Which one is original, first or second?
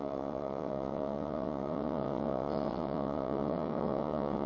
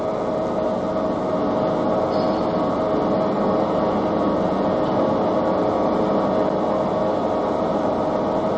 second